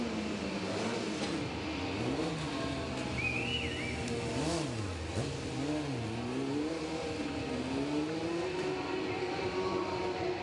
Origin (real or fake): real